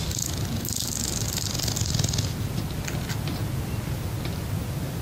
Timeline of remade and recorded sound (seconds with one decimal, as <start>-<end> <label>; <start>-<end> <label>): 0.0-5.0 recorded

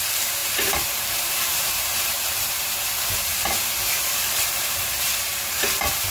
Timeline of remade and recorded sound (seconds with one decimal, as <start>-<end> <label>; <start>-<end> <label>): 0.0-6.1 remade

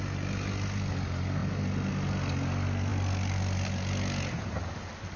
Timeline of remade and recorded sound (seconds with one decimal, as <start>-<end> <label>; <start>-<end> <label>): 0.0-5.2 recorded

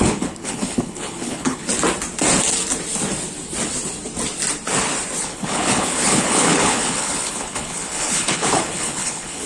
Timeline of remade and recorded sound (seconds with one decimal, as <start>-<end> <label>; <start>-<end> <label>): 0.0-1.7 remade; 1.7-5.2 recorded; 5.2-9.5 remade

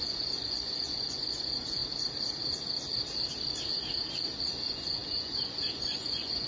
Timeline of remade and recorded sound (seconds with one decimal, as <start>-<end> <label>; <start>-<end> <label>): 0.0-1.8 remade; 1.8-4.6 recorded; 4.6-6.5 remade

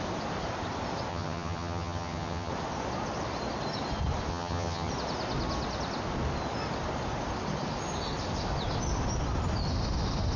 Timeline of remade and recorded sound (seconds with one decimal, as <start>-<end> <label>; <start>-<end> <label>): 0.0-1.1 recorded; 1.1-2.5 remade; 2.5-4.3 recorded; 4.3-4.9 remade; 4.9-10.4 recorded